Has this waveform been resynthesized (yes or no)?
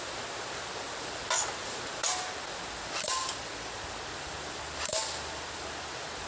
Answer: no